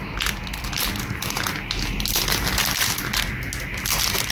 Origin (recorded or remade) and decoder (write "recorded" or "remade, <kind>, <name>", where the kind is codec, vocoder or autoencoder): recorded